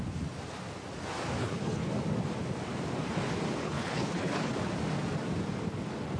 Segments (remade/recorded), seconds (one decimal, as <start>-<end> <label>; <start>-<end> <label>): 0.0-1.4 recorded; 1.4-1.9 remade; 1.9-3.6 recorded; 3.6-4.5 remade; 4.5-6.2 recorded